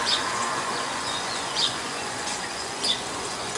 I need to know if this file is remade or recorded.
remade